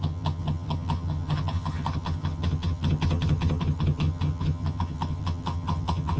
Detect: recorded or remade remade